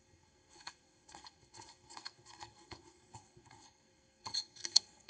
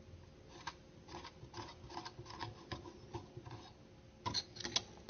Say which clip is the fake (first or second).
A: first